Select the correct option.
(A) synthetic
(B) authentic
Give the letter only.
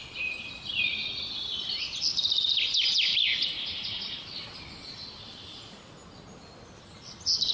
B